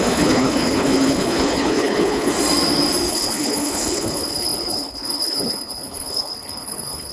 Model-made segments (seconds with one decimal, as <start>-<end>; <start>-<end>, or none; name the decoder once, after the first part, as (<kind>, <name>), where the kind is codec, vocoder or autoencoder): 0.0-2.3 (codec, HILCodec); 3.1-7.1